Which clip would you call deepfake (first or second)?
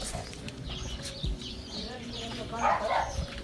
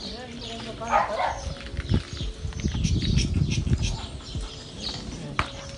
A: first